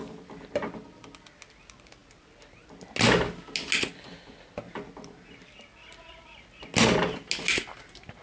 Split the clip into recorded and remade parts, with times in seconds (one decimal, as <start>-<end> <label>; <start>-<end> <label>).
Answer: 0.0-8.2 recorded